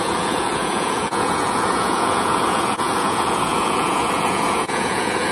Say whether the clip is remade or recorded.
remade